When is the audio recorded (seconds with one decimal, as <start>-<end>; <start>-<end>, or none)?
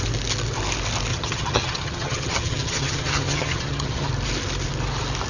0.0-1.1; 4.1-5.3